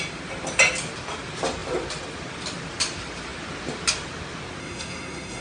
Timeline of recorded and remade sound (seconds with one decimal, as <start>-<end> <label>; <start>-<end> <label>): 0.0-4.6 recorded; 4.6-5.4 remade